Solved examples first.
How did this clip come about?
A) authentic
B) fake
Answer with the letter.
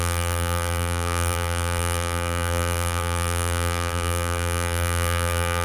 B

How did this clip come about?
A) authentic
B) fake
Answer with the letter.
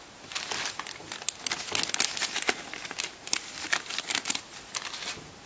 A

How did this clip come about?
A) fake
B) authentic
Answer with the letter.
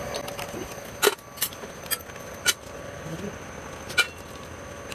B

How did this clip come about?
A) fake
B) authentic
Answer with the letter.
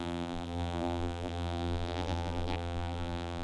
A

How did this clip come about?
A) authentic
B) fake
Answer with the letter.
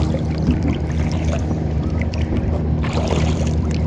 B